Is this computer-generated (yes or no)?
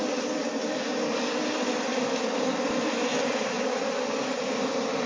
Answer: no